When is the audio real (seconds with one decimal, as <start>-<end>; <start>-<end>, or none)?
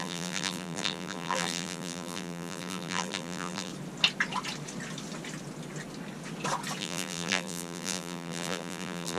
3.7-6.8